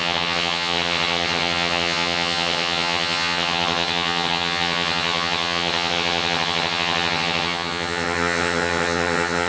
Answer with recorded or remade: remade